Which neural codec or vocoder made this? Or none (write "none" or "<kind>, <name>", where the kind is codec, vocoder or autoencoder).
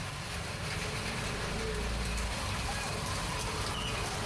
none